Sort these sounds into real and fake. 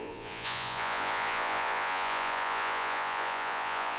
fake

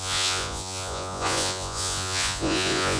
fake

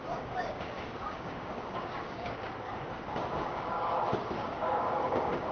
fake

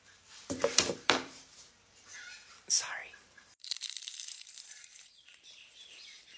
fake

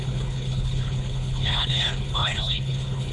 fake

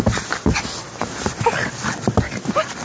real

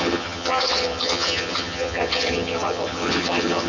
fake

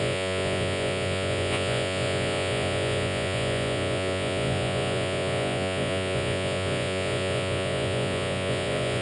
fake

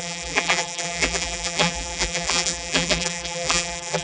fake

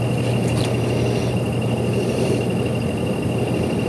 real